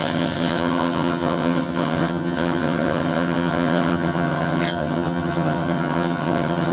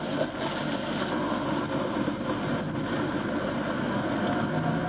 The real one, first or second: second